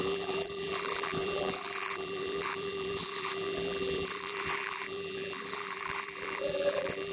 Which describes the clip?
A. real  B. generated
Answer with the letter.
B